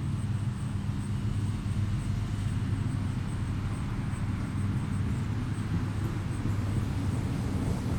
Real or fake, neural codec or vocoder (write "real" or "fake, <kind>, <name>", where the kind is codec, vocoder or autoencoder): real